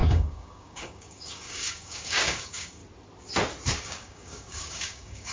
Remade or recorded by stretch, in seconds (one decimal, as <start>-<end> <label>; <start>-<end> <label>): 0.0-2.8 remade; 2.8-3.8 recorded; 3.8-5.3 remade